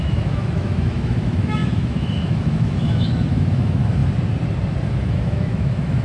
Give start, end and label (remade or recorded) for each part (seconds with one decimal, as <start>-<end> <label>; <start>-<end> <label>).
0.0-4.0 remade; 4.0-4.9 recorded; 4.9-6.0 remade